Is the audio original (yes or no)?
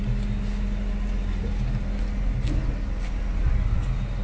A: yes